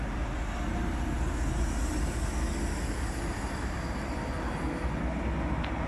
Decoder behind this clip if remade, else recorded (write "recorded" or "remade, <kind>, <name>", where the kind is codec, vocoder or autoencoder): recorded